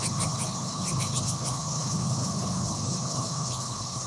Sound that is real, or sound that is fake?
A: fake